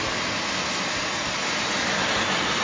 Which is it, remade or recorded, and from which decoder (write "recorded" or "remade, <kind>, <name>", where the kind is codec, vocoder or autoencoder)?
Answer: recorded